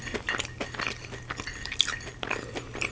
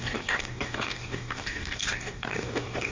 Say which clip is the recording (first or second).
first